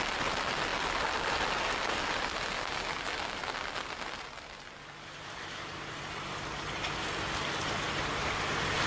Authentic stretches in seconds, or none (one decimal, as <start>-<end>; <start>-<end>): 0.0-8.9